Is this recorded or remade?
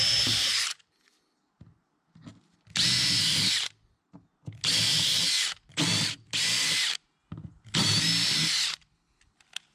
recorded